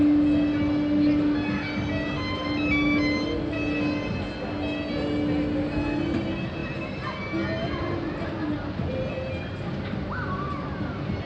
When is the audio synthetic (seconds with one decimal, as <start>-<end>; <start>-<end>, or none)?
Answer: none